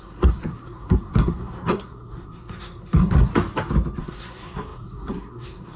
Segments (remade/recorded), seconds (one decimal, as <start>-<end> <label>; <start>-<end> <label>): 0.0-3.3 remade; 3.3-4.0 recorded; 4.0-5.8 remade